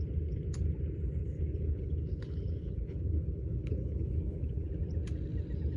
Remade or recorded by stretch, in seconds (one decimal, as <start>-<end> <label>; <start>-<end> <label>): 0.0-1.2 recorded; 1.2-4.7 remade; 4.7-5.8 recorded